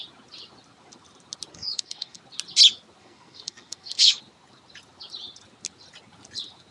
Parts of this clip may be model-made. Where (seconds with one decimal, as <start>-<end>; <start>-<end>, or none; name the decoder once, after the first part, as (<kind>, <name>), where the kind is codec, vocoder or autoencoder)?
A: 1.5-2.2 (codec, SNAC); 3.0-4.2